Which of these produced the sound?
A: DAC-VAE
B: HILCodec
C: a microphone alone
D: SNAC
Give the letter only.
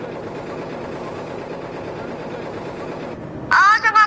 C